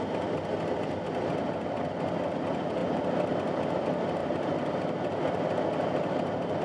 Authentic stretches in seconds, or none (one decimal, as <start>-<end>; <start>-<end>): 0.0-6.6